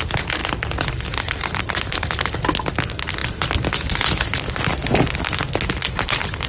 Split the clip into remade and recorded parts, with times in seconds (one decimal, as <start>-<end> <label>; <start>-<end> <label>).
0.0-6.5 recorded